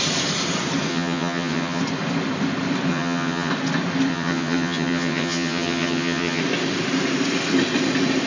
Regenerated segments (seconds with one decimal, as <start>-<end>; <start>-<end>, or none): 0.9-1.8; 2.9-3.5; 4.1-6.4